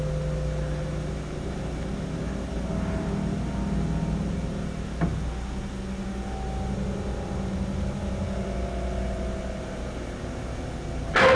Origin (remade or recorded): recorded